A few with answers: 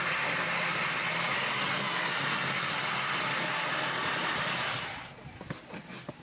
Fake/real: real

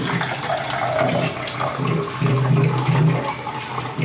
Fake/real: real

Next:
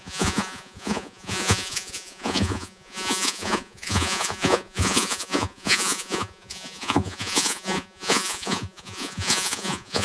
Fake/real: fake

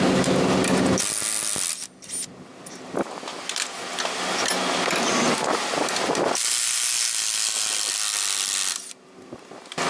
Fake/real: real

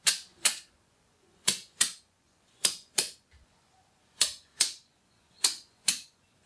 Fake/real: fake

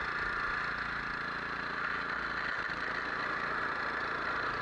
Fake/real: real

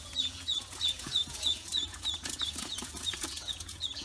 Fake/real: fake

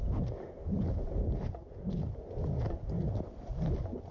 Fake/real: real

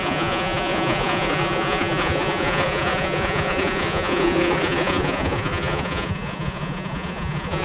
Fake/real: fake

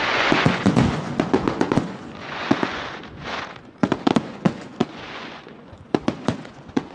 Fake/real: fake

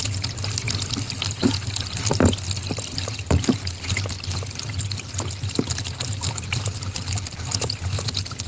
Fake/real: real